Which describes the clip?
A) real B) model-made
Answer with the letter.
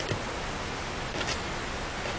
A